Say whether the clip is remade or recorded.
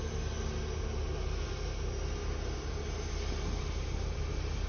recorded